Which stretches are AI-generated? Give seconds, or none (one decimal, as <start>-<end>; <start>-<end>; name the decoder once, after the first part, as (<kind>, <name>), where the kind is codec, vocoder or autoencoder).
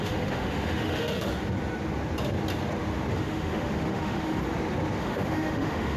0.0-1.3 (autoencoder, DAC-VAE); 3.1-4.4; 5.0-6.0